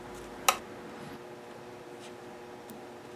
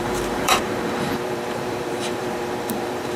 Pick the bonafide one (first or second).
first